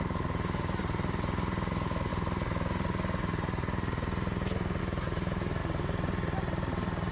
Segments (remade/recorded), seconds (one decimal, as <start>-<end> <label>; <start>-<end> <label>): 0.0-0.8 remade; 0.8-1.7 recorded; 1.7-2.1 remade; 2.1-4.8 recorded; 4.8-5.6 remade; 5.6-7.1 recorded